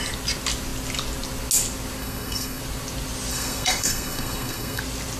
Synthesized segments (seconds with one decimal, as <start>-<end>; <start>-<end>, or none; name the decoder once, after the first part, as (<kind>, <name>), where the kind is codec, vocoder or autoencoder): 2.0-2.6 (codec, SNAC); 3.3-4.8